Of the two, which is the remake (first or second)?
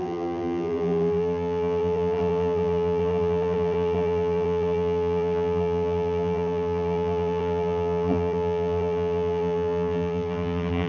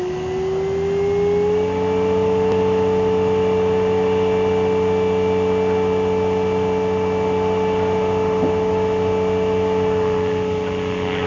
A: first